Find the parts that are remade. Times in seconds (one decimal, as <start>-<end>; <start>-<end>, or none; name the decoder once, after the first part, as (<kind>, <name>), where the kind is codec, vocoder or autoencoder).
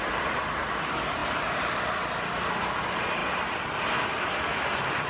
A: none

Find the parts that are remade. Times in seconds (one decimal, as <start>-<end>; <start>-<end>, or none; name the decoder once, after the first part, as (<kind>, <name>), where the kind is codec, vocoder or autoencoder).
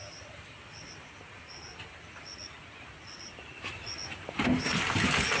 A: none